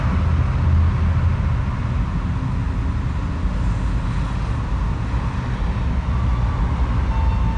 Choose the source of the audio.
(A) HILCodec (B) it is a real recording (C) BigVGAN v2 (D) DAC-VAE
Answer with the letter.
B